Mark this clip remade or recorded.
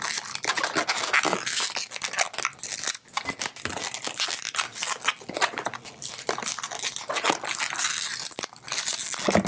recorded